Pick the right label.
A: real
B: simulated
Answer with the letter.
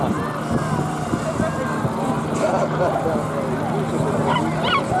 A